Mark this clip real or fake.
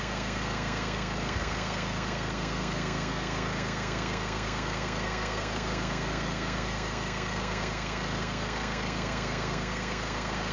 fake